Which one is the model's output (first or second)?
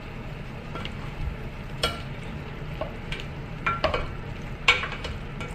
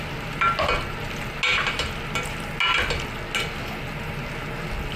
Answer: first